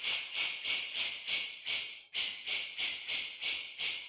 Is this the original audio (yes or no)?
yes